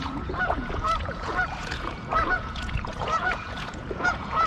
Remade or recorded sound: remade